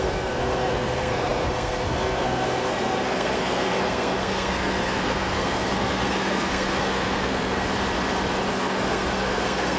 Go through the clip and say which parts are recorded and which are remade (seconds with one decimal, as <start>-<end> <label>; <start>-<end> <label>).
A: 0.0-7.7 remade; 7.7-8.5 recorded; 8.5-9.8 remade